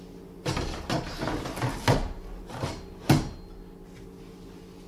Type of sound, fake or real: real